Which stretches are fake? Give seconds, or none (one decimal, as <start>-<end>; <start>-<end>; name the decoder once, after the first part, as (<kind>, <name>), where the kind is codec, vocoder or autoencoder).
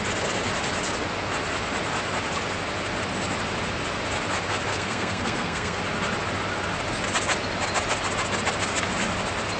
4.7-5.8 (codec, SNAC)